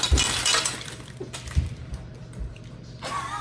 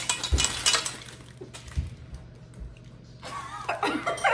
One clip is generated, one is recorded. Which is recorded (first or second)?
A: second